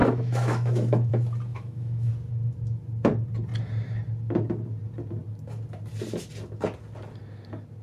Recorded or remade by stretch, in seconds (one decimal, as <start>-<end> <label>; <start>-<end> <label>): 0.0-1.1 remade; 1.1-1.5 recorded; 1.5-2.1 remade; 2.1-7.8 recorded